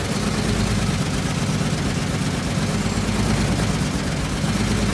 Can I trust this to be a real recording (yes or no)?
yes